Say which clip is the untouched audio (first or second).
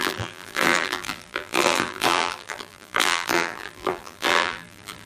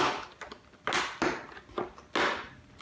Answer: second